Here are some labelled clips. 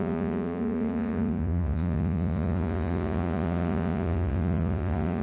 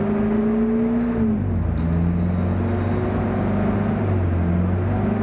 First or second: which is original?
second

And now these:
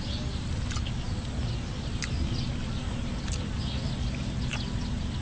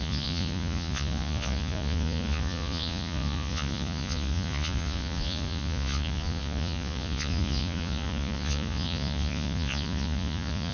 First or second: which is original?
first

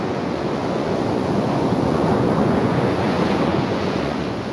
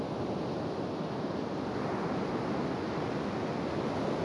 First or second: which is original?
second